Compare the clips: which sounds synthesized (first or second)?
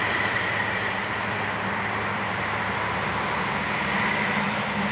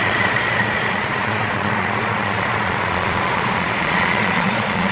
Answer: second